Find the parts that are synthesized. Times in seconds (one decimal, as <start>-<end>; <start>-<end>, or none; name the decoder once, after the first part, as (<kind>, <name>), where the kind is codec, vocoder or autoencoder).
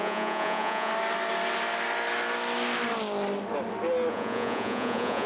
0.0-0.9 (vocoder, Vocos); 4.1-5.3